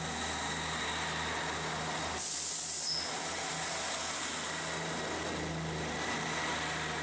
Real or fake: real